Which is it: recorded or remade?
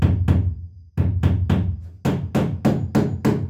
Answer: recorded